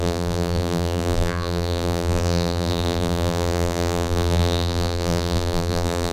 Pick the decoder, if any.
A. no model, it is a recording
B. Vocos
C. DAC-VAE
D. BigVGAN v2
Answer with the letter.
D